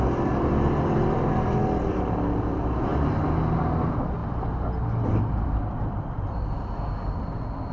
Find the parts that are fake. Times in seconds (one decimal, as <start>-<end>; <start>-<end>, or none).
0.0-2.9; 3.6-4.2; 5.2-7.7